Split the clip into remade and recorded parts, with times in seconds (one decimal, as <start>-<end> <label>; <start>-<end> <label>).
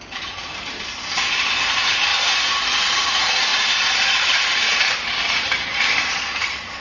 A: 0.0-2.1 remade; 2.1-2.9 recorded; 2.9-6.8 remade